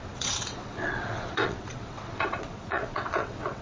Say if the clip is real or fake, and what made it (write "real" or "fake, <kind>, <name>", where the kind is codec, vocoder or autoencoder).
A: fake, vocoder, WaveNeXt